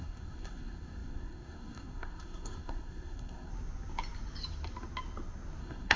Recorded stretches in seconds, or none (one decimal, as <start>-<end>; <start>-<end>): 3.5-5.6